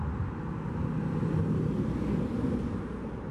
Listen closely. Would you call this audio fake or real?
real